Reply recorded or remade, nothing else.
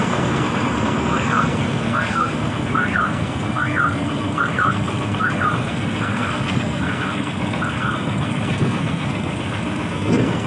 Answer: remade